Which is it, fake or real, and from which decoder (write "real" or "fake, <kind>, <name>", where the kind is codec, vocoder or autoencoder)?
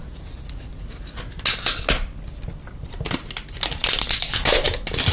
real